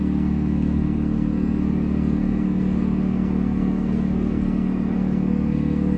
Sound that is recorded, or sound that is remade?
remade